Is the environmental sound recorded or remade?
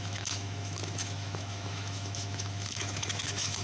remade